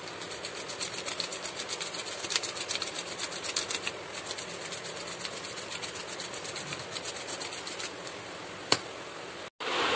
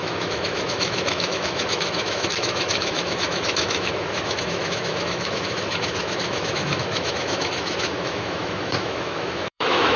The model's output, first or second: second